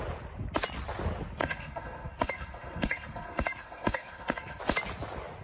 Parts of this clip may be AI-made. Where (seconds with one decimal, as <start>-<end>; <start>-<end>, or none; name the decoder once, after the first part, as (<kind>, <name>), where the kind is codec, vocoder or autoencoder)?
1.4-4.6 (codec, SNAC)